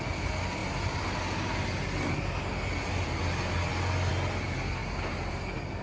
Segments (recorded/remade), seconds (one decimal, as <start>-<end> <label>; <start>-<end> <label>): 0.0-5.8 recorded